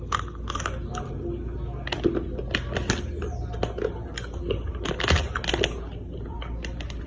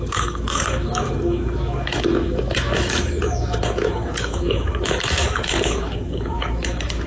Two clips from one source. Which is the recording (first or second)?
first